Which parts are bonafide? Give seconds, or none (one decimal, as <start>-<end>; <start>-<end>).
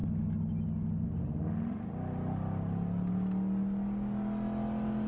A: 0.0-5.1